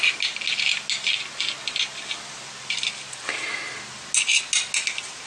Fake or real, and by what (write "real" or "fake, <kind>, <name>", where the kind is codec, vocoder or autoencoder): real